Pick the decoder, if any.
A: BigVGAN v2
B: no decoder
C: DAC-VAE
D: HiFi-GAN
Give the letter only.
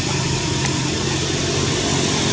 B